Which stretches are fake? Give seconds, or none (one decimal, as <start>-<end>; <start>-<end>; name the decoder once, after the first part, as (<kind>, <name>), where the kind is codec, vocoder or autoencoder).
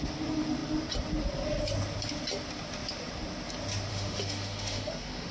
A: 3.9-5.3 (autoencoder, DAC-VAE)